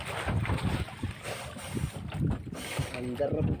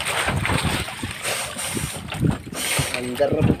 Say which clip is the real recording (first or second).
second